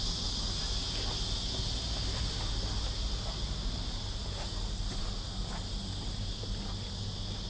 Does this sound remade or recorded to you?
recorded